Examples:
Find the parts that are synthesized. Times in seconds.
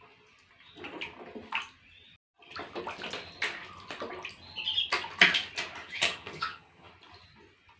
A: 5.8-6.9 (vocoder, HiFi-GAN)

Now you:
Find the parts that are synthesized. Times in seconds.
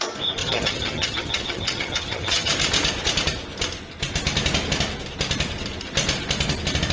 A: 0.4-2.5 (vocoder, HiFi-GAN)